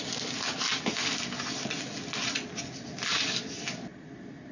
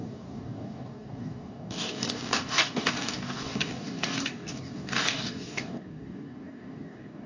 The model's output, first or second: second